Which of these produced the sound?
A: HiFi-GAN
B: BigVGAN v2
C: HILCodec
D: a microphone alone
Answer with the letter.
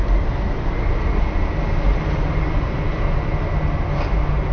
D